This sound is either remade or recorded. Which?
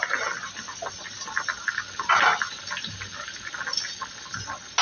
recorded